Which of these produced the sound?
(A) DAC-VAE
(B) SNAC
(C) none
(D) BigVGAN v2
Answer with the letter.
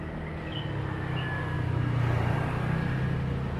C